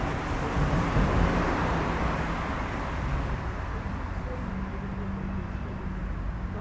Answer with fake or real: real